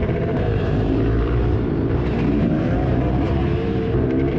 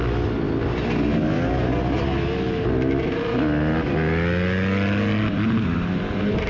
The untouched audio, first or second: second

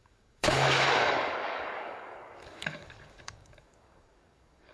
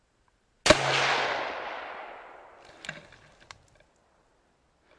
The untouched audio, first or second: second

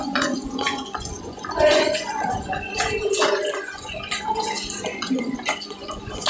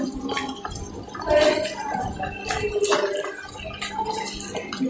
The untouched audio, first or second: second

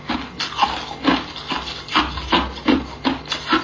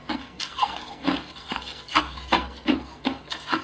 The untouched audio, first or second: first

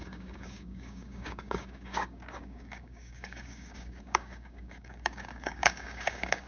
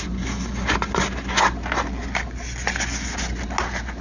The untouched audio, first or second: second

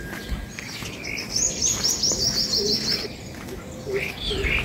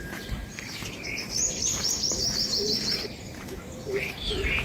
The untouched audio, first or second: first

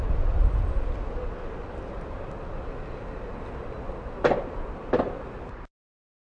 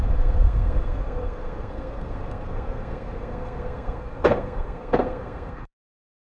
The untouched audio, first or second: first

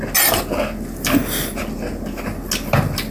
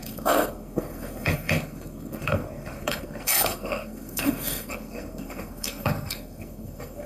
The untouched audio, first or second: first